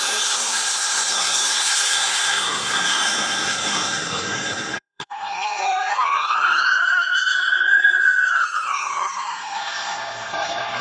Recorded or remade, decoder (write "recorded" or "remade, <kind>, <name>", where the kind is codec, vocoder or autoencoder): remade, codec, SNAC